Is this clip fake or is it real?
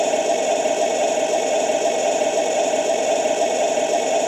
fake